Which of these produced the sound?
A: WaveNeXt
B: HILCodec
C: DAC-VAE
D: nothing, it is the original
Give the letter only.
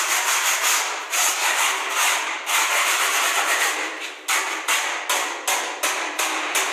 D